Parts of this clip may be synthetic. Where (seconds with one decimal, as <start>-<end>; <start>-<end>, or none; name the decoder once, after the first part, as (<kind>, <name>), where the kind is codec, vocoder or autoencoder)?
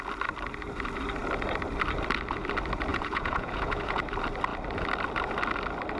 2.9-4.0 (vocoder, Vocos)